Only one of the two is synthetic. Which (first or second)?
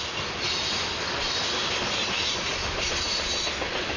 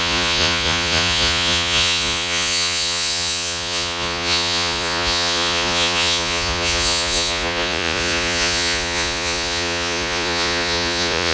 second